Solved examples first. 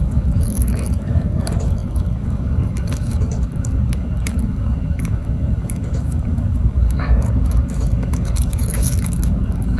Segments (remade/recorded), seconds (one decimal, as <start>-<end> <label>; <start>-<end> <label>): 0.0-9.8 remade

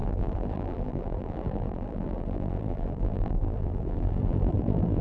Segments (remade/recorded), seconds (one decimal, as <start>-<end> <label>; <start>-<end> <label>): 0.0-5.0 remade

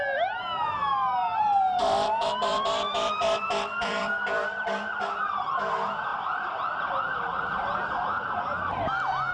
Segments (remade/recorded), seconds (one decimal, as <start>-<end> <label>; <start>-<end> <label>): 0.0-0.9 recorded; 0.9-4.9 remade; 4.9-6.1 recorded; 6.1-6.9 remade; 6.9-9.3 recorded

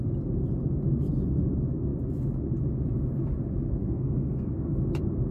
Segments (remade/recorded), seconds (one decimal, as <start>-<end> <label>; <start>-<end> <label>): 0.0-3.8 recorded; 3.8-4.5 remade; 4.5-5.3 recorded